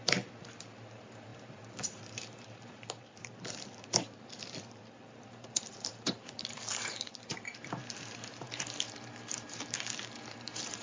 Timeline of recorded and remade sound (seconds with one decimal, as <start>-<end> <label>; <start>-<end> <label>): 0.0-10.8 remade